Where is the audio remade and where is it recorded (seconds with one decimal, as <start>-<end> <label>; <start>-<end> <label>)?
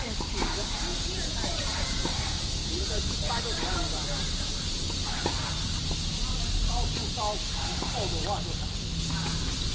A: 0.0-0.9 recorded; 0.9-2.0 remade; 2.0-2.6 recorded; 2.6-3.4 remade; 3.4-9.7 recorded